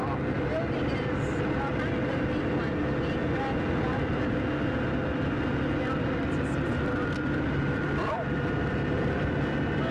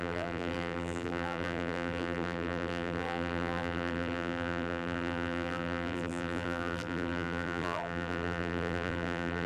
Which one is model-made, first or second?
second